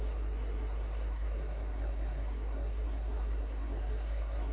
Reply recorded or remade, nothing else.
remade